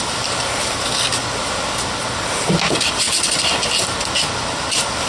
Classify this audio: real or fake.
real